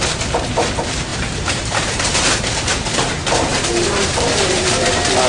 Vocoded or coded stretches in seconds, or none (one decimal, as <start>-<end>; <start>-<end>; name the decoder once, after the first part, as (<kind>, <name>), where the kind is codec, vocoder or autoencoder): 1.1-2.1 (vocoder, BigVGAN v2); 3.5-4.7